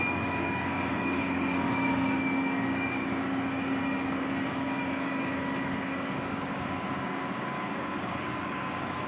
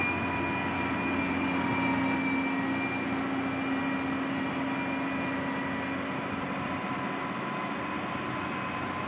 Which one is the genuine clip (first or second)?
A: second